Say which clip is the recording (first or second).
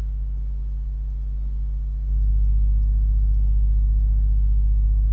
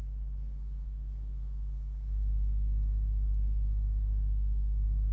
first